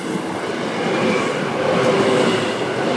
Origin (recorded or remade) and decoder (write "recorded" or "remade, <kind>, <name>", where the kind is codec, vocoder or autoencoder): recorded